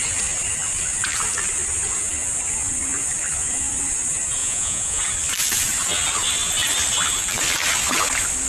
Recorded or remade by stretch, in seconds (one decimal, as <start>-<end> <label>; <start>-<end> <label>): 0.0-4.4 recorded; 4.4-5.0 remade; 5.0-8.5 recorded